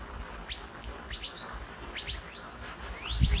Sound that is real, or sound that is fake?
real